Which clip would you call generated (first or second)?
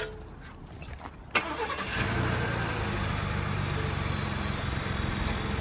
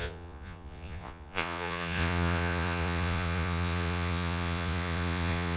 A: second